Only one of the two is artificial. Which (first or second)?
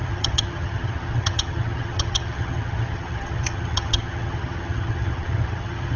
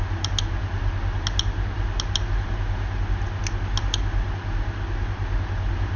first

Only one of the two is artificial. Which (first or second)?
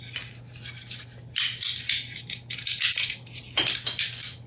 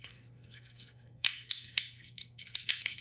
second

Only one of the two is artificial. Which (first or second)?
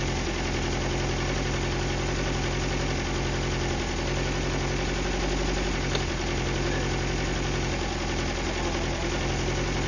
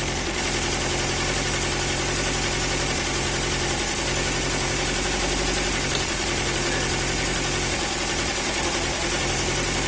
second